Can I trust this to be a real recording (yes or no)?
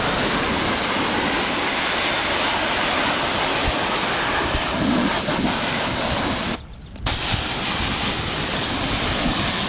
yes